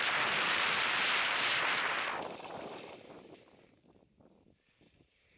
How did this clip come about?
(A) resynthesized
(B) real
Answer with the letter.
A